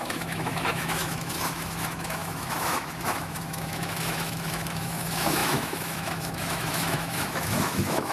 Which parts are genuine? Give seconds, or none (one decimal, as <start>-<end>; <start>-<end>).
none